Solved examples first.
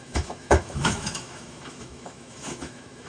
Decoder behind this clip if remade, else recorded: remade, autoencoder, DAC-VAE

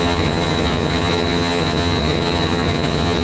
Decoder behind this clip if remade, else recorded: remade, vocoder, HiFi-GAN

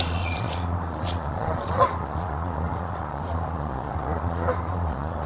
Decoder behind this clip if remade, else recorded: remade, vocoder, Vocos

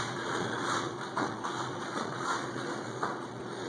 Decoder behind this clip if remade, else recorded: remade, vocoder, Vocos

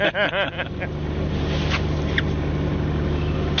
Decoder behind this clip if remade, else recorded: recorded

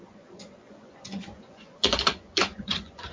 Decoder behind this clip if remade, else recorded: remade, vocoder, Vocos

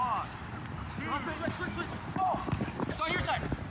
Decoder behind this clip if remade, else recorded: recorded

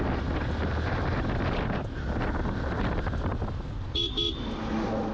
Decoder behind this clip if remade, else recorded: recorded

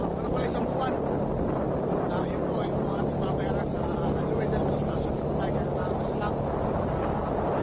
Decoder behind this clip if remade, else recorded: recorded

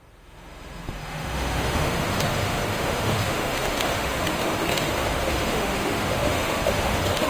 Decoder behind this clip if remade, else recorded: remade, autoencoder, DAC-VAE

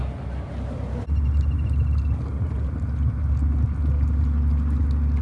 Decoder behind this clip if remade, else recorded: recorded